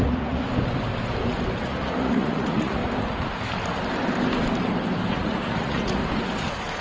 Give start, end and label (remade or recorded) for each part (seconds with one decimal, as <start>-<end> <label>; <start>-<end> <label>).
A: 0.0-0.4 remade; 0.4-1.6 recorded; 1.6-2.8 remade; 2.8-5.1 recorded; 5.1-6.0 remade; 6.0-6.8 recorded